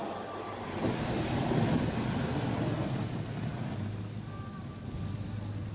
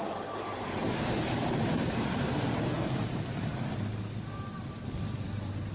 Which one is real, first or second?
first